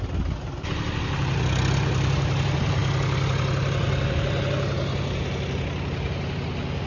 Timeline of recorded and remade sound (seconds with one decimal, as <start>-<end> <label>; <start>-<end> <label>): 0.0-6.9 recorded